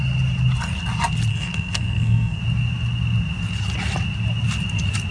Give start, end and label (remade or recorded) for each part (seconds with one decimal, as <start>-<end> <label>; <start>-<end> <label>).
0.0-1.3 recorded; 1.3-2.4 remade; 2.4-5.1 recorded